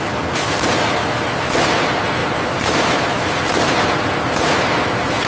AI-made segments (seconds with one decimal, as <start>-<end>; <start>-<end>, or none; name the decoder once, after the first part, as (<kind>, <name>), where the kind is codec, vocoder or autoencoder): none